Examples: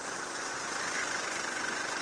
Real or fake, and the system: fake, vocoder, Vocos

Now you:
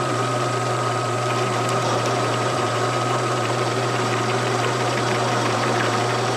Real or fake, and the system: fake, vocoder, BigVGAN v2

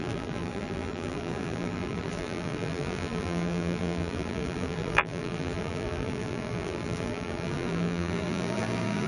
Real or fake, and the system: fake, vocoder, BigVGAN v2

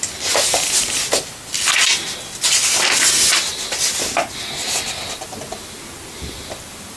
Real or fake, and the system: real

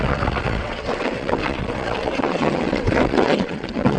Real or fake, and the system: fake, vocoder, WaveNeXt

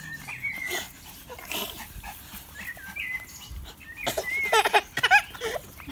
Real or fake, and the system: real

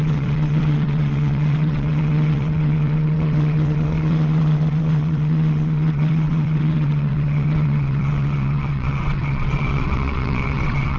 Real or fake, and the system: fake, vocoder, WaveNeXt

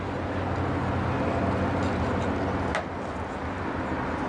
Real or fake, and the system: real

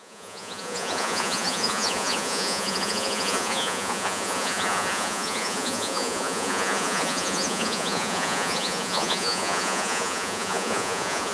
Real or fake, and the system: fake, vocoder, Vocos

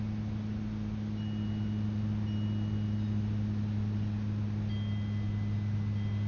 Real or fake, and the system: real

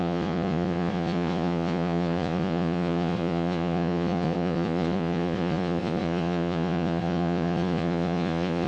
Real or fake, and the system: fake, vocoder, Vocos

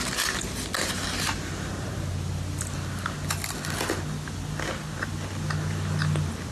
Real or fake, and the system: real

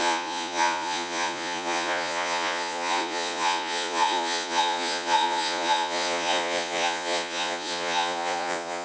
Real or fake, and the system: fake, vocoder, Vocos